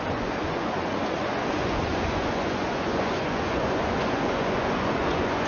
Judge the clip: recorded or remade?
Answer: remade